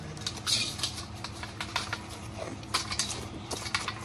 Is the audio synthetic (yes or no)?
no